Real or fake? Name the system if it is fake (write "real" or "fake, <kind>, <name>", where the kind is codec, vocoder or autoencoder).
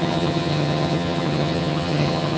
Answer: fake, vocoder, HiFi-GAN